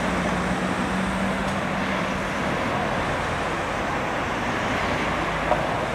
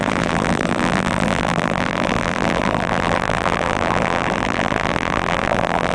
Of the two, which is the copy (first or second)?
second